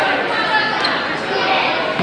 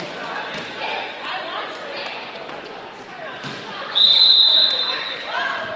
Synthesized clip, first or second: second